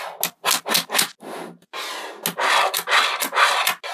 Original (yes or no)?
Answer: yes